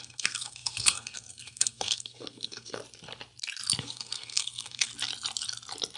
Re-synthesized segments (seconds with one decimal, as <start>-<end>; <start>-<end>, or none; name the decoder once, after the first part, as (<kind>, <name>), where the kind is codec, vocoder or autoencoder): 0.0-2.8 (codec, SNAC); 3.8-4.9